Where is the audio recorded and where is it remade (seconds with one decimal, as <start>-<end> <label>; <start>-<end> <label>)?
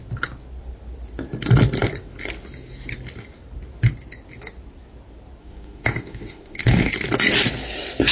0.0-5.4 recorded; 5.4-6.9 remade; 6.9-8.1 recorded